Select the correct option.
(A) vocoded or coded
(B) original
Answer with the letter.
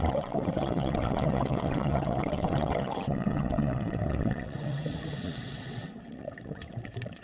A